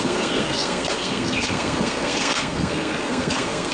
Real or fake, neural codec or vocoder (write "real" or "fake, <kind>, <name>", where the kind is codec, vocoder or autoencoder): fake, codec, SNAC